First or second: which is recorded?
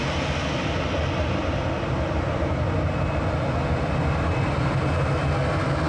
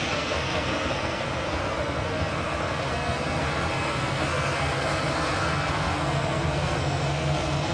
first